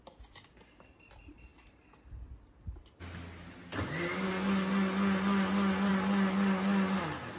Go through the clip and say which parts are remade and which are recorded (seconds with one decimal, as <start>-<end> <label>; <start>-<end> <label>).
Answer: 0.0-7.4 recorded